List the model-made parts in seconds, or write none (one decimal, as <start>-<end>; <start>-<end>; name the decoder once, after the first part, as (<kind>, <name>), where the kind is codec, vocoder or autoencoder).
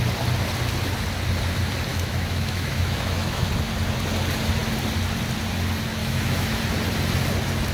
1.9-3.5 (autoencoder, DAC-VAE); 6.0-6.6